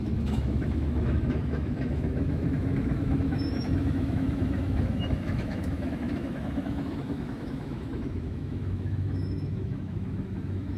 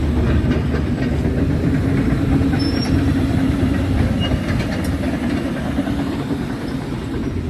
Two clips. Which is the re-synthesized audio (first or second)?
first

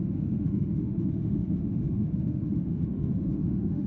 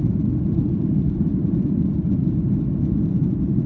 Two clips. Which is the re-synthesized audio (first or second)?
first